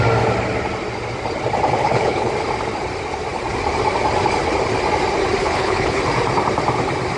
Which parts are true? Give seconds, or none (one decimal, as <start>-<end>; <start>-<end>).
0.0-1.8; 2.3-5.4; 6.0-7.2